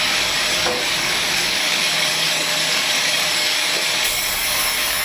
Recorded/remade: remade